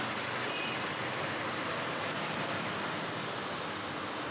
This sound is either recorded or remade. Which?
recorded